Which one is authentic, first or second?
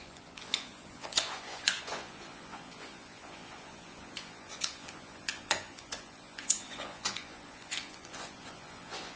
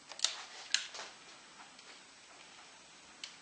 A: second